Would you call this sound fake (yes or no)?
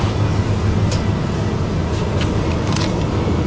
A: no